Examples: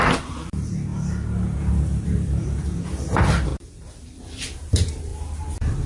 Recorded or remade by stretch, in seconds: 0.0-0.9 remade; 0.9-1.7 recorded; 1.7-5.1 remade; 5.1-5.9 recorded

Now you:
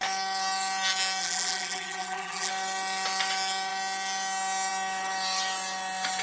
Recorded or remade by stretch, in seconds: 0.0-1.2 recorded; 1.2-2.5 remade; 2.5-6.2 recorded

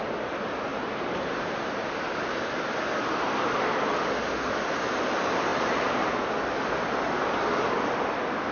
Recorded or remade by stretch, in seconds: 0.0-0.7 recorded; 0.7-2.9 remade; 2.9-5.5 recorded; 5.5-6.1 remade; 6.1-8.5 recorded

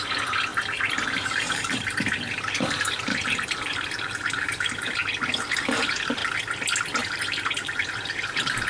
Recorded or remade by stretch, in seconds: 0.0-5.0 remade; 5.0-5.5 recorded; 5.5-6.2 remade; 6.2-7.0 recorded; 7.0-8.7 remade

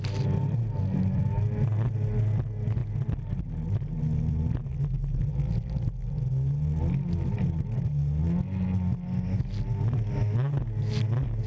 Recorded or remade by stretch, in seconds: 0.0-11.5 recorded